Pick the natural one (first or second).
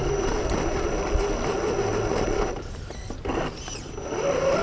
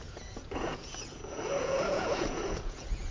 first